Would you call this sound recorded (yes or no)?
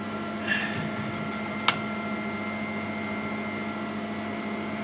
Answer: yes